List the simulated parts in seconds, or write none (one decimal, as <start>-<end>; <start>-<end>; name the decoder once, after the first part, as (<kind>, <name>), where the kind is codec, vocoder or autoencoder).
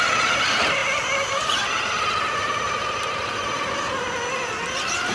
none